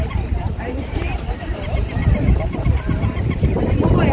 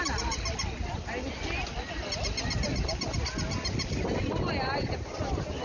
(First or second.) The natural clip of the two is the second